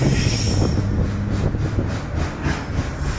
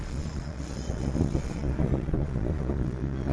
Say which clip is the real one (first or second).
first